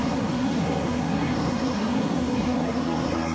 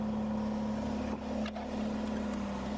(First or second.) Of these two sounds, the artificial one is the first